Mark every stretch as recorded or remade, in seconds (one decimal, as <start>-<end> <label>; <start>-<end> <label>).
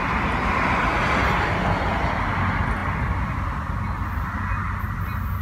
0.0-5.4 recorded